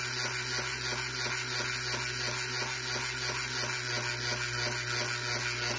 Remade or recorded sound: recorded